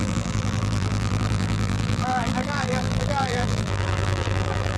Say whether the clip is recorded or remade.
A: remade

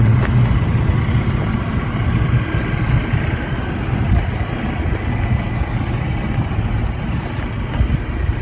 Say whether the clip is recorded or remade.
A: recorded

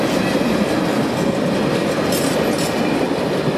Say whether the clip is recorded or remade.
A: recorded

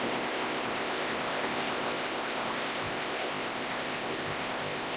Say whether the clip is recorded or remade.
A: remade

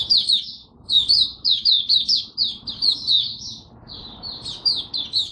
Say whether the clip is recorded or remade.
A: remade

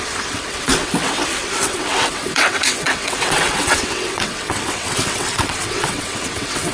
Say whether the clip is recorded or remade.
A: remade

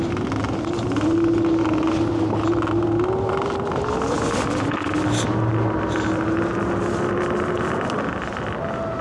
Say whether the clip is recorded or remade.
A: recorded